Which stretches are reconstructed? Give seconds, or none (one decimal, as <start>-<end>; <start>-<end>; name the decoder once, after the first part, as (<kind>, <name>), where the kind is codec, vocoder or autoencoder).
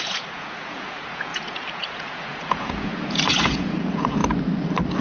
0.0-4.2 (vocoder, Vocos)